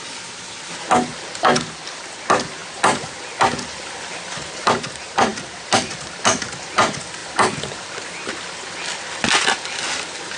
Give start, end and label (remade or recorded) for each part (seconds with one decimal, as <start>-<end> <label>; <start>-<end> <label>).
0.0-10.4 recorded